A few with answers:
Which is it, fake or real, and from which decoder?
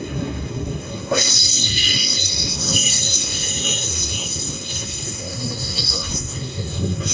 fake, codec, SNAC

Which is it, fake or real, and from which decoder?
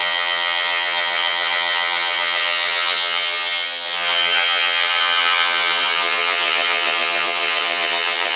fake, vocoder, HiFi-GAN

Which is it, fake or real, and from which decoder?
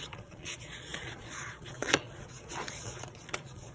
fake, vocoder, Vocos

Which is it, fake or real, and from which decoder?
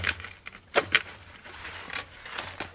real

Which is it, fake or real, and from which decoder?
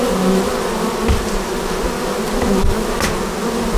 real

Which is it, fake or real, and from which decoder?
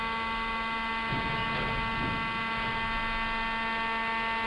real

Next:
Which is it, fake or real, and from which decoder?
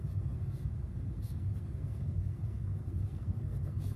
fake, codec, SNAC